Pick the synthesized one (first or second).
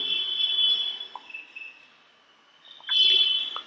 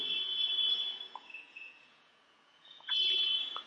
second